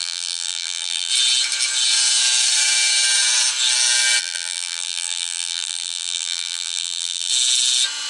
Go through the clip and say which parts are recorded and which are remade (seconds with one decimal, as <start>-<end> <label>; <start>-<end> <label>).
0.0-1.1 remade; 1.1-4.2 recorded; 4.2-7.3 remade; 7.3-8.1 recorded